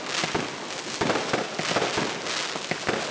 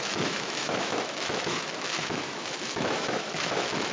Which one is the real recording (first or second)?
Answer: first